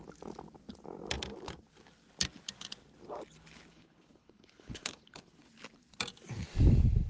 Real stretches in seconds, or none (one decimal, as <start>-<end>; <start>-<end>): 0.0-3.7; 5.5-7.1